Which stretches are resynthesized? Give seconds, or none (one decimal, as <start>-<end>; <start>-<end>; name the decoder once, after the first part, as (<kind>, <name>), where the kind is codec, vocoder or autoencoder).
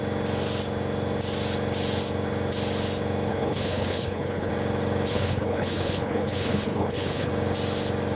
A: 3.3-4.5 (codec, HILCodec); 5.1-7.3